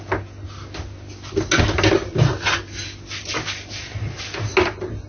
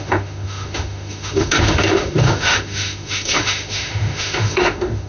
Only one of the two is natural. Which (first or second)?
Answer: first